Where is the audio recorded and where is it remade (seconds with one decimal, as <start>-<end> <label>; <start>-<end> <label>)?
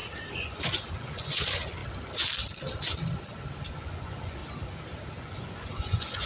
0.0-1.8 remade; 1.8-3.7 recorded; 3.7-4.4 remade; 4.4-5.2 recorded; 5.2-6.3 remade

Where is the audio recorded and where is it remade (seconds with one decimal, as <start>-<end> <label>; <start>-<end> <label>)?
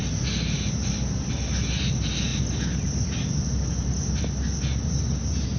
0.0-5.6 recorded